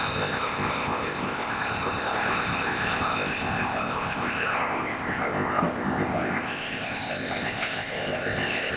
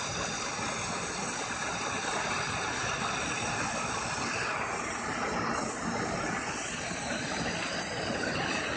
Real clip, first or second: second